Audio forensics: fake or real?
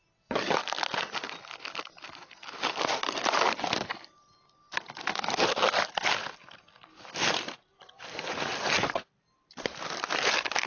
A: real